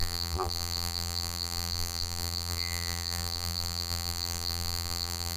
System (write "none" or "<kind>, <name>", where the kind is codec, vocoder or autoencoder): vocoder, BigVGAN v2